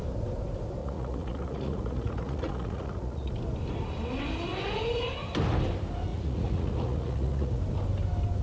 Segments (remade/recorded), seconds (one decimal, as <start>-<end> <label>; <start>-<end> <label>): 0.0-0.8 recorded; 0.8-3.3 remade; 3.3-6.1 recorded; 6.1-7.6 remade; 7.6-8.4 recorded